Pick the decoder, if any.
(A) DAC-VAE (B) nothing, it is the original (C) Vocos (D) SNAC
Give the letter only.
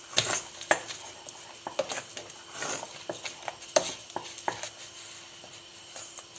B